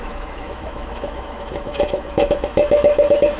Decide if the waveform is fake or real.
fake